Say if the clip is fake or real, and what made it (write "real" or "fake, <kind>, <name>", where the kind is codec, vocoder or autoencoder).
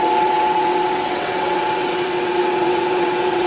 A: fake, vocoder, WaveNeXt